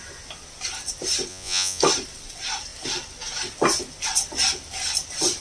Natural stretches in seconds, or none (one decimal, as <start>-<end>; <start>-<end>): 0.0-1.3; 1.8-5.4